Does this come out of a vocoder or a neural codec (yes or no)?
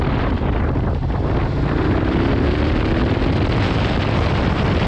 no